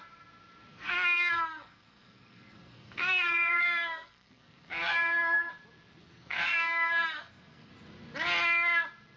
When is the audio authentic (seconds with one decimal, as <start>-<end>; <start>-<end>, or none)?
0.0-0.7; 5.5-6.0; 7.7-9.2

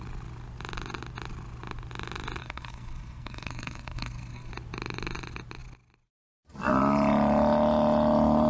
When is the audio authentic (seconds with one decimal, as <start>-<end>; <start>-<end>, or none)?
0.0-2.4; 4.5-8.5

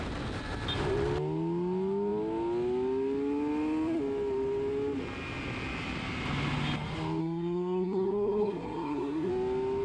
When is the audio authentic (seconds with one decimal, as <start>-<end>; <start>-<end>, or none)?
0.0-7.2; 9.3-9.8

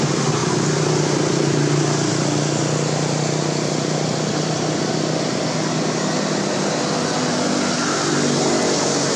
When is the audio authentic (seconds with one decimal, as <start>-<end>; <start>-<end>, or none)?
0.0-9.2

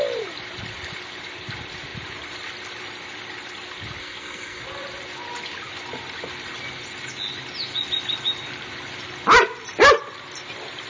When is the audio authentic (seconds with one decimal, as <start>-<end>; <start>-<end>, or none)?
0.0-4.0; 4.6-10.9

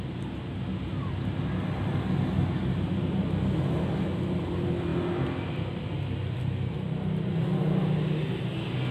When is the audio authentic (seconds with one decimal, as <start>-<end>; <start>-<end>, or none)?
0.0-8.9

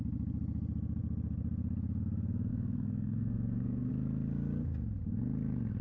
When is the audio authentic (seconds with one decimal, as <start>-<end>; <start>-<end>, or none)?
0.0-2.5; 3.9-5.8

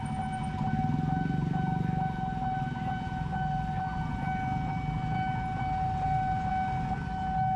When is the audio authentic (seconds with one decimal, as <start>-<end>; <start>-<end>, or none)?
0.0-7.6